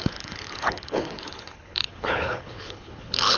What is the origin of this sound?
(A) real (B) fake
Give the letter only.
B